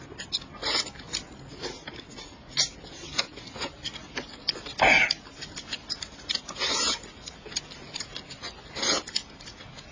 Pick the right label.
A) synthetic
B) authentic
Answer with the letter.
B